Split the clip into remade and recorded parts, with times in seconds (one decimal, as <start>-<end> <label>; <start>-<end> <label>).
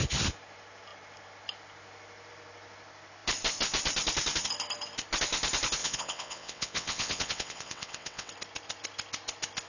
0.0-5.8 recorded; 5.8-8.3 remade; 8.3-9.7 recorded